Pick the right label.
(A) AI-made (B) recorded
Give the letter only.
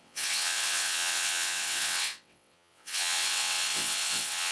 A